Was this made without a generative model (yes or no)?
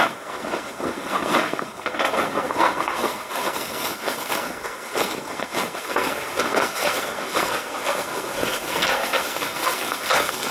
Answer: no